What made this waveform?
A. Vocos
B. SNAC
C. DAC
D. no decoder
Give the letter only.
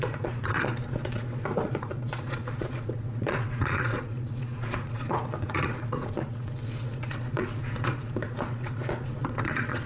A